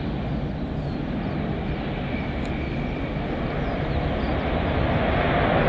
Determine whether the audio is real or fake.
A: real